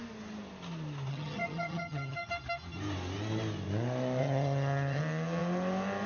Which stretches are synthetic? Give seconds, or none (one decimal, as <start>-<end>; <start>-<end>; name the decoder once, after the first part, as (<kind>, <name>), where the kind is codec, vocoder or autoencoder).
1.1-2.3 (vocoder, HiFi-GAN); 4.2-5.0